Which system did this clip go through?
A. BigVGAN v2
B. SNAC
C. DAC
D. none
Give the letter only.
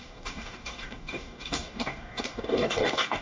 C